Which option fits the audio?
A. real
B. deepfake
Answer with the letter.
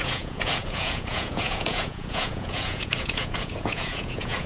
B